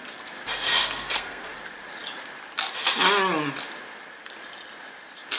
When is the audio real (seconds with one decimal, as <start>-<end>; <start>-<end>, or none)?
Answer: 0.0-0.8; 1.5-5.4